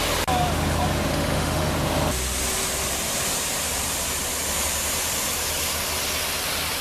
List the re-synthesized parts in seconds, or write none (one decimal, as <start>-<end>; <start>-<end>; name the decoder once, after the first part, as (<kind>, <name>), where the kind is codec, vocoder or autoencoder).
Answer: 1.1-1.7 (autoencoder, DAC-VAE)